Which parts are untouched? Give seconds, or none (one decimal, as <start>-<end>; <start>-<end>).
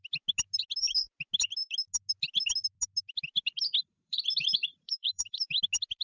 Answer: 0.0-3.9; 5.6-6.0